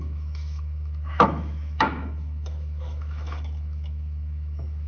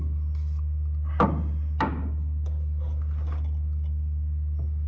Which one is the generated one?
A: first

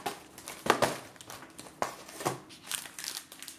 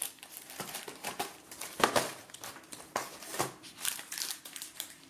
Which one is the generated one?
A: second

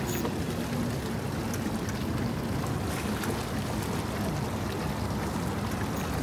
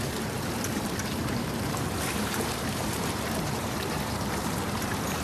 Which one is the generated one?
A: second